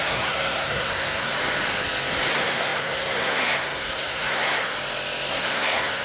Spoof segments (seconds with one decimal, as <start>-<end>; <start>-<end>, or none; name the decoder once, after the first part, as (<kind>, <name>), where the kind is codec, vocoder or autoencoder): 0.0-1.3 (codec, SNAC); 2.3-4.7; 5.3-6.0